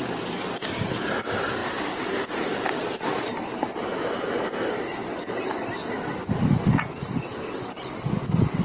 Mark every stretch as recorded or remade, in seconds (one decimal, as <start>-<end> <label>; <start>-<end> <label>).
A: 0.0-5.0 remade; 5.0-7.6 recorded; 7.6-8.6 remade